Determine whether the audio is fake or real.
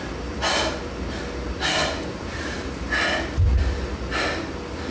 real